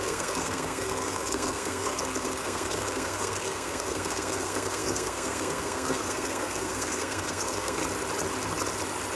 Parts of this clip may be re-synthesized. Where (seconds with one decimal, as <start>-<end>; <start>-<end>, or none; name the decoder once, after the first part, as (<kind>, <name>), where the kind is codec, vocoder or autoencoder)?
0.0-7.8 (codec, SNAC)